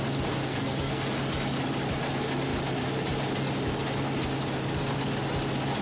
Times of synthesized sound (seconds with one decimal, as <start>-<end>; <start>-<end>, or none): 0.4-1.0